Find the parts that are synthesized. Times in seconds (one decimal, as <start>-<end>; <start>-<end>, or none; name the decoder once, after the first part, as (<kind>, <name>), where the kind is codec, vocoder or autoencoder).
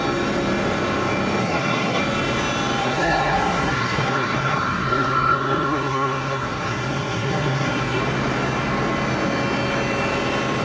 1.4-2.0 (codec, SNAC); 2.8-8.0